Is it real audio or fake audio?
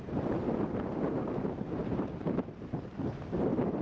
fake